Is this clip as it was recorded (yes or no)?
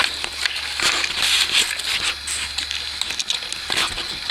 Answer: yes